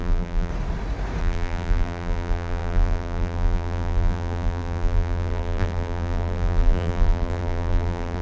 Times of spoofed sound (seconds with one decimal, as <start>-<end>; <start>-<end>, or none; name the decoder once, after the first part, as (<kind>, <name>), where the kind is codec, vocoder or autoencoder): 0.0-0.5 (vocoder, BigVGAN v2); 1.2-8.2